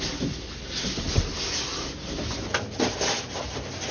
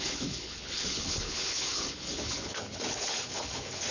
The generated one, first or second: second